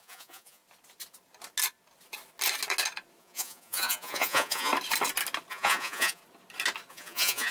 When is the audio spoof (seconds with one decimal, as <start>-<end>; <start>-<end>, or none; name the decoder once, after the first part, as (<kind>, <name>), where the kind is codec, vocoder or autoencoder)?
0.0-0.6 (vocoder, Vocos); 3.2-4.7; 5.5-6.2; 6.9-7.5